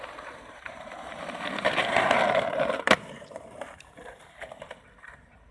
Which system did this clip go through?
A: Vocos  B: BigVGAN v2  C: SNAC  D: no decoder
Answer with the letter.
B